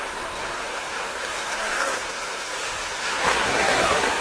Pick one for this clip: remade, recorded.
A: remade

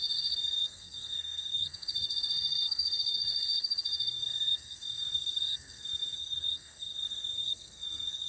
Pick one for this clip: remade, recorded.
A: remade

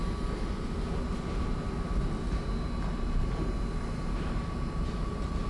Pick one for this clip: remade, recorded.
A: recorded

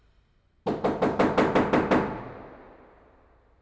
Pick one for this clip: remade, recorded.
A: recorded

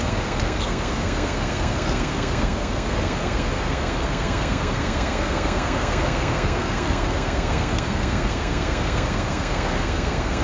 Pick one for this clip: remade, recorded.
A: remade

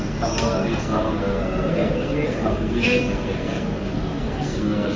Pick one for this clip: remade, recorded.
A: remade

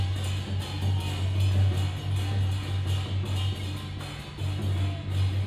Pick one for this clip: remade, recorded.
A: recorded